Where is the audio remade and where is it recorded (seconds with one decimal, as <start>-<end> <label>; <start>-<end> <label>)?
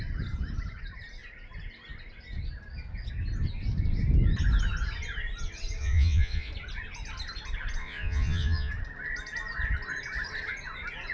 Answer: 0.0-5.8 recorded; 5.8-6.5 remade; 6.5-7.8 recorded; 7.8-8.7 remade; 8.7-11.1 recorded